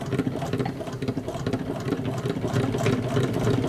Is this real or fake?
real